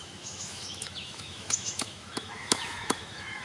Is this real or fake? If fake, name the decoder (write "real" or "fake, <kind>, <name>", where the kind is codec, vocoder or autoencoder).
fake, autoencoder, DAC-VAE